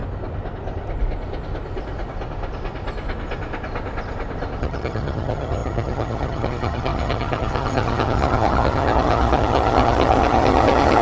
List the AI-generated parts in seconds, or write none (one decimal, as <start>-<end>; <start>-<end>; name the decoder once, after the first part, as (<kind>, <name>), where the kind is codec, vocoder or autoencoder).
4.6-11.0 (vocoder, HiFi-GAN)